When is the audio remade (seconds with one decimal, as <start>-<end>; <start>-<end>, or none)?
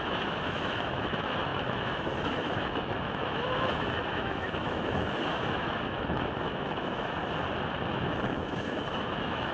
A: 0.0-7.2; 7.9-9.5